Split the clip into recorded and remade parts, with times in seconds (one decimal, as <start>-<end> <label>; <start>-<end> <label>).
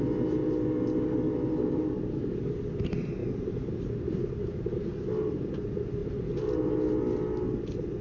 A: 0.0-3.2 recorded; 3.2-3.9 remade; 3.9-8.0 recorded